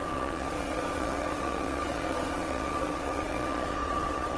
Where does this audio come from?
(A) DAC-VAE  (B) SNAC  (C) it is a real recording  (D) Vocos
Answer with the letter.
D